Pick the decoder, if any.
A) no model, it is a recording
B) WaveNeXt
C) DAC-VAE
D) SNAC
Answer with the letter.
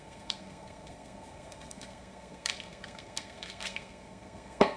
D